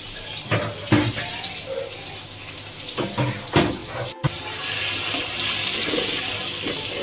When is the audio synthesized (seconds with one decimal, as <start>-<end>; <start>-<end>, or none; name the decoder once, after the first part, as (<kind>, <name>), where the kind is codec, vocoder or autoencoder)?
3.8-4.4 (vocoder, BigVGAN v2)